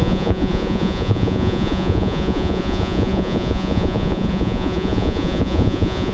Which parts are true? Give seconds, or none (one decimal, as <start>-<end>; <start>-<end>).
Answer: none